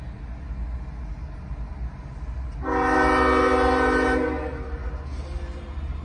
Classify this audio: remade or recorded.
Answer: recorded